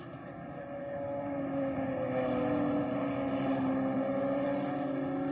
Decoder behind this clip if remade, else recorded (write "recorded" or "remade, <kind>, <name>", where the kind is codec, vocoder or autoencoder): recorded